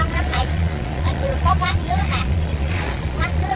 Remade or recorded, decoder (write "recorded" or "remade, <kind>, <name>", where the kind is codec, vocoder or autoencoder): remade, vocoder, Vocos